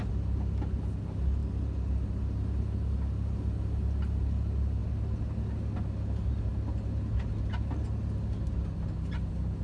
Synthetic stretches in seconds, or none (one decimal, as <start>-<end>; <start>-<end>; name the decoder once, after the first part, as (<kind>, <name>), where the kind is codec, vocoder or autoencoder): none